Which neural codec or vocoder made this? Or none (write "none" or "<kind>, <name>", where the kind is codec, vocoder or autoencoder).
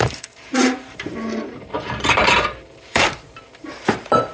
vocoder, BigVGAN v2